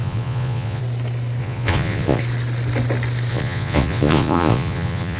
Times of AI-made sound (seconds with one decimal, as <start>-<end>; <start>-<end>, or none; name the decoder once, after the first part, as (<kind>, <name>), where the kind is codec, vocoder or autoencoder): 0.0-0.8 (vocoder, Vocos); 1.4-2.2; 3.3-5.2